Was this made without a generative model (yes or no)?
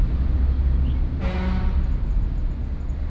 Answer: yes